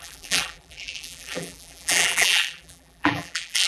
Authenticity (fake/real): fake